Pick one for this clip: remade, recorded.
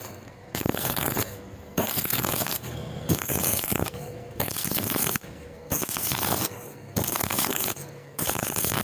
remade